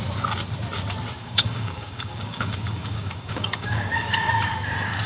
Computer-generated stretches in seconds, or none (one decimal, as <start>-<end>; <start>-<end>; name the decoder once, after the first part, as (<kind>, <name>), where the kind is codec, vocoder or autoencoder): 1.2-4.3 (codec, DAC)